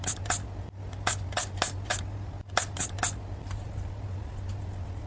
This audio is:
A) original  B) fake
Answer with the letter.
A